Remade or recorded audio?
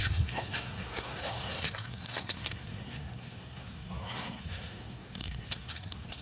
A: remade